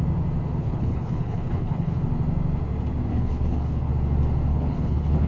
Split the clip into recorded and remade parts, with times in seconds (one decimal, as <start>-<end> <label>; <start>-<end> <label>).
0.0-0.6 recorded; 0.6-2.0 remade; 2.0-3.1 recorded; 3.1-3.9 remade; 3.9-4.5 recorded; 4.5-5.3 remade